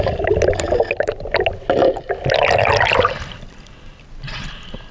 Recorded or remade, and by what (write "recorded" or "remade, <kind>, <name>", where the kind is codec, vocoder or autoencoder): recorded